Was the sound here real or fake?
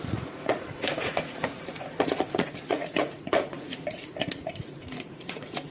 fake